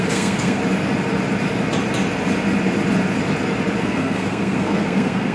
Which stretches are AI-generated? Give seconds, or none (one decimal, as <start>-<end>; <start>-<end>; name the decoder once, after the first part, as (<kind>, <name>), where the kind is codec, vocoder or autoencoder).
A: 0.0-0.6 (codec, SNAC); 3.8-5.3